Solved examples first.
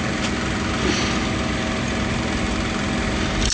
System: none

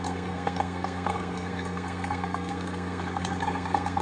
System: codec, SNAC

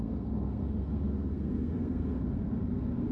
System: codec, SNAC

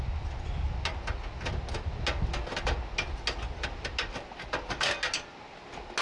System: none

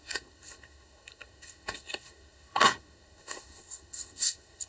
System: codec, SNAC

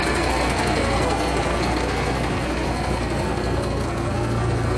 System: codec, SNAC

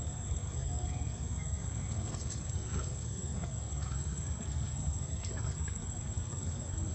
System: codec, SNAC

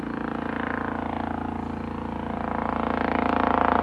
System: none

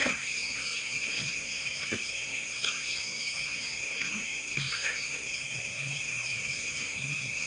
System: codec, SNAC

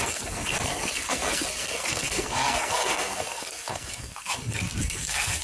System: codec, SNAC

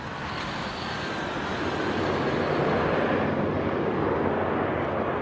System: none